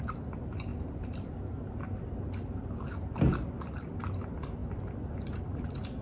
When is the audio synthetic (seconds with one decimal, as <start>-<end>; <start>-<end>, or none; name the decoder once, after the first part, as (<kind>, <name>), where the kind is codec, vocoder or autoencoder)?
none